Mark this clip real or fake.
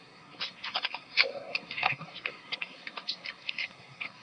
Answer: fake